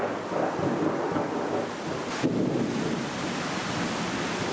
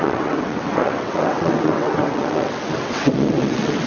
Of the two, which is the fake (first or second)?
second